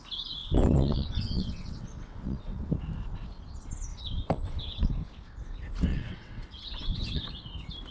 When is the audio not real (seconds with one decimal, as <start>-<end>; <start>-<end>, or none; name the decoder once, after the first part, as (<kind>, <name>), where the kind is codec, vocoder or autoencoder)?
0.4-2.7 (vocoder, WaveNeXt); 3.9-4.9; 5.9-7.3